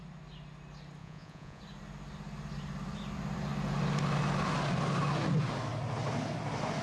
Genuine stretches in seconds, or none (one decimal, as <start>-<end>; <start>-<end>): 0.0-1.0; 1.6-6.8